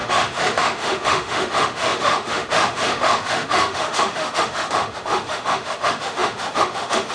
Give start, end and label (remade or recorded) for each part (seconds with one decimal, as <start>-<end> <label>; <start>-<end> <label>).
0.0-7.1 remade